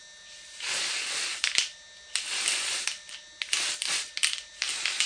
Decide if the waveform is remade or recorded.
recorded